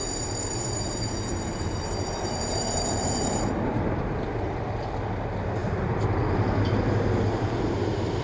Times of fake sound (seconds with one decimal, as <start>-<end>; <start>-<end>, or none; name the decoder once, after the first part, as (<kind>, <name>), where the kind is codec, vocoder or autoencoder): 0.0-4.5 (vocoder, BigVGAN v2)